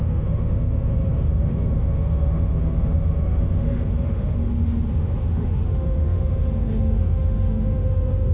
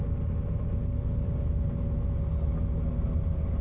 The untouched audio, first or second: second